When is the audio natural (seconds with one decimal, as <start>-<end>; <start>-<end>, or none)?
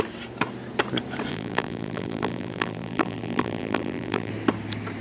0.0-1.3; 4.3-5.0